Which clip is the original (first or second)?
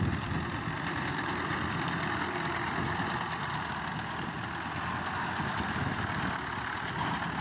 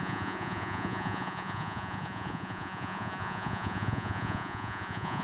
first